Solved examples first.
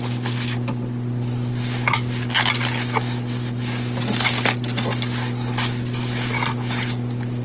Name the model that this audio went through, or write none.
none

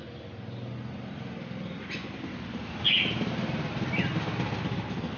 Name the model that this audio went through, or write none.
none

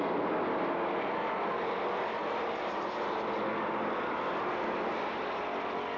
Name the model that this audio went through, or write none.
none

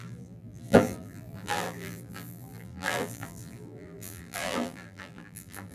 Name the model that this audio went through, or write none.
vocoder, BigVGAN v2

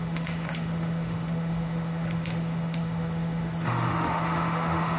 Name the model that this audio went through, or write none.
autoencoder, DAC-VAE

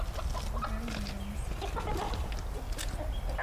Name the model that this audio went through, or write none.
none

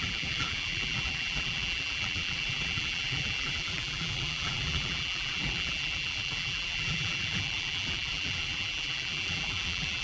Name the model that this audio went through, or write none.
vocoder, BigVGAN v2